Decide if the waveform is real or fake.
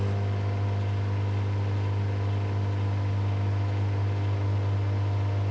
real